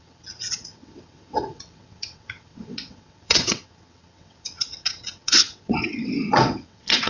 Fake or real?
fake